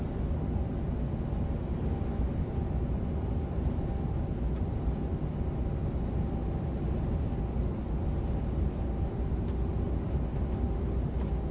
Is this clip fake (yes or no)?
no